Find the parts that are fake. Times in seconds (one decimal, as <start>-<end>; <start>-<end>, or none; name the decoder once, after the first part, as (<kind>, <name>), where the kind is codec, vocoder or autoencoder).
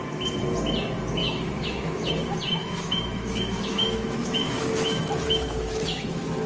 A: 1.2-2.1 (autoencoder, DAC-VAE); 2.6-6.5